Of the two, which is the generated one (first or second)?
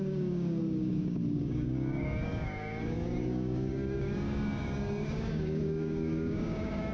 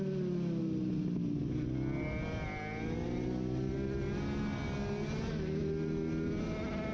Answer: first